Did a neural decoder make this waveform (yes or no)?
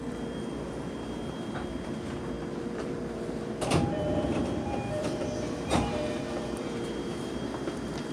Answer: yes